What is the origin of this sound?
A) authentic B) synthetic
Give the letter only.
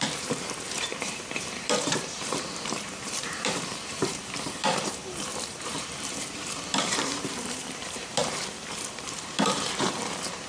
B